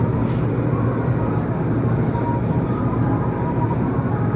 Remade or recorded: recorded